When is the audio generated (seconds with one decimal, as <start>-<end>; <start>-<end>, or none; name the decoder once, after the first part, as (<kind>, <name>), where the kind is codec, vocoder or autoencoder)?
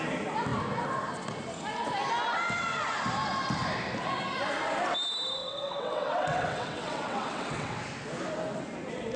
5.4-7.8 (vocoder, WaveNeXt)